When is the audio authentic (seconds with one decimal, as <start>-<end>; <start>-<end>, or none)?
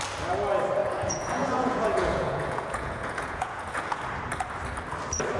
0.0-0.8; 4.0-5.4